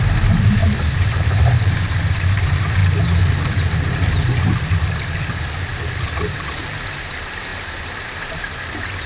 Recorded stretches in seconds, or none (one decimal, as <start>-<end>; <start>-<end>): 0.6-1.2; 2.8-6.2